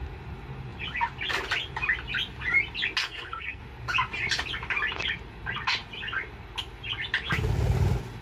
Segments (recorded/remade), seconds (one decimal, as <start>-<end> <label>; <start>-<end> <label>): 0.0-3.0 recorded; 3.0-3.6 remade; 3.6-8.2 recorded